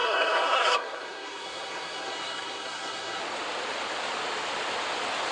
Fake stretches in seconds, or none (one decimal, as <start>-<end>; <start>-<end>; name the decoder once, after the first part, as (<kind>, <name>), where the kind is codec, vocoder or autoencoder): 0.0-3.2 (codec, SNAC)